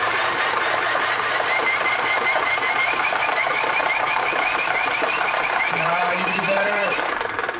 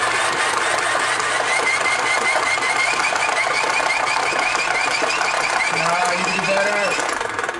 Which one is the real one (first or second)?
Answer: second